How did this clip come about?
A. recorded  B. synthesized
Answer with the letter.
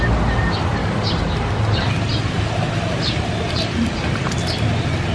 A